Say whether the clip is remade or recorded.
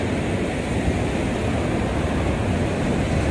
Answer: recorded